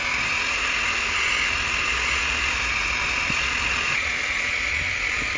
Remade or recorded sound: recorded